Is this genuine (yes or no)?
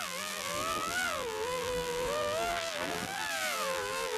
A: no